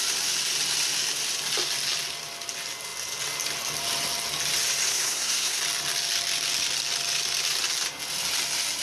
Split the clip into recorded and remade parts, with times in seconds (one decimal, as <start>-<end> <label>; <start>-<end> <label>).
0.0-4.9 recorded; 4.9-5.6 remade; 5.6-8.8 recorded